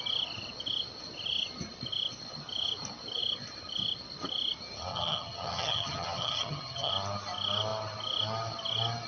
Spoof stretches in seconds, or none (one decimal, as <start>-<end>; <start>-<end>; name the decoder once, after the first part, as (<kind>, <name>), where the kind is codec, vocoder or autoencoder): 4.9-6.9 (vocoder, HiFi-GAN)